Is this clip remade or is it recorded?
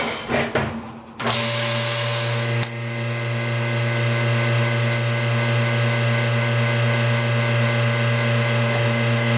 recorded